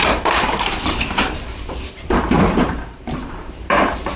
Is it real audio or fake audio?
fake